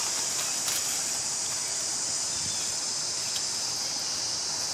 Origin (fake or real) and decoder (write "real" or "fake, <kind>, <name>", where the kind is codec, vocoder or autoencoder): real